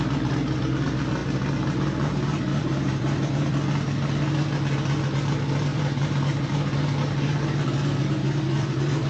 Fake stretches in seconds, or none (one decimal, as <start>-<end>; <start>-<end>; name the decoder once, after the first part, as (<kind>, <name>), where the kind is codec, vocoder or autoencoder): 2.5-3.5 (vocoder, BigVGAN v2); 5.7-6.5